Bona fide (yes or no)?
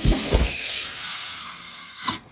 no